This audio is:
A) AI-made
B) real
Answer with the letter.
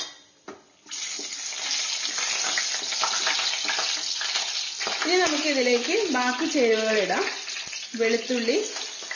B